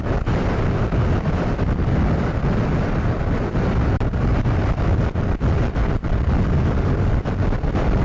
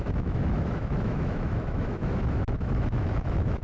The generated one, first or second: second